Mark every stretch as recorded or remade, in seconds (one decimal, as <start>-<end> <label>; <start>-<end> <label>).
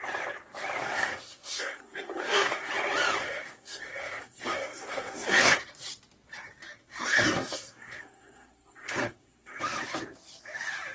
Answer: 0.0-0.8 recorded; 0.8-2.7 remade; 2.7-3.2 recorded; 3.2-5.6 remade; 5.6-6.8 recorded; 6.8-9.6 remade; 9.6-10.9 recorded